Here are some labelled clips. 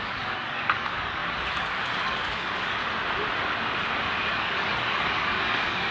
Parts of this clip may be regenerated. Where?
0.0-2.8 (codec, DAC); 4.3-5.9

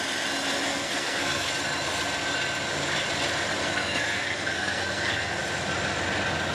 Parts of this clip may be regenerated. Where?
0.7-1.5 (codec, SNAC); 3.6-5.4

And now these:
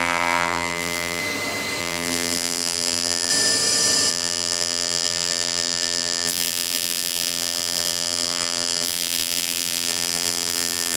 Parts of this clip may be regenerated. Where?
0.0-1.2 (vocoder, BigVGAN v2); 1.8-3.3; 4.1-11.0